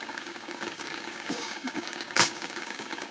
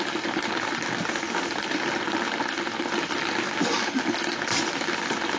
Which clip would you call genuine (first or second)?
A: second